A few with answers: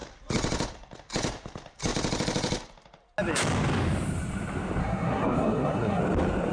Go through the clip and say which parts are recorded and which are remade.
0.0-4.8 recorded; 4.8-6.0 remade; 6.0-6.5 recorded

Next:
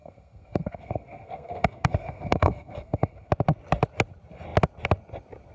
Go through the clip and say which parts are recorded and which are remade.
0.0-3.3 remade; 3.3-5.5 recorded